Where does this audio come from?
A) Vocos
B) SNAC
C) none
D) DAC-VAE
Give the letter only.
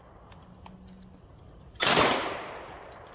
C